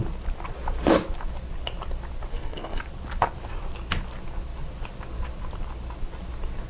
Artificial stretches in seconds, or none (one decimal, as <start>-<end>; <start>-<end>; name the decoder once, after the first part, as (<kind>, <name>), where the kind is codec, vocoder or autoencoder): 2.3-2.8 (codec, SNAC)